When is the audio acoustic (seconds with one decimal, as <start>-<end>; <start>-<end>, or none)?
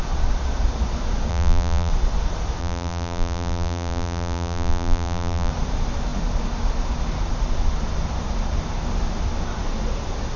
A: 0.0-1.3; 1.9-2.6; 5.5-10.4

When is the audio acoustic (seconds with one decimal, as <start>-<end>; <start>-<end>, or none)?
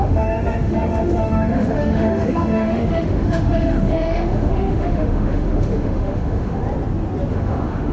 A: 6.6-7.3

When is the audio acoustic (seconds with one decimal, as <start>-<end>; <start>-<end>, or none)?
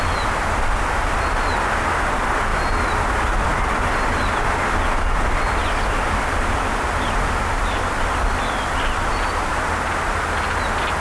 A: 0.0-11.0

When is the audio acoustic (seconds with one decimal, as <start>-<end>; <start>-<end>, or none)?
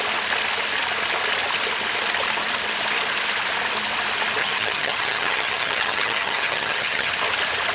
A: 0.0-4.4; 7.1-7.7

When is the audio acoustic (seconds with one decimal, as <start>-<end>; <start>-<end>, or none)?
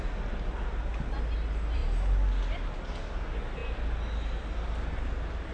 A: 0.0-5.5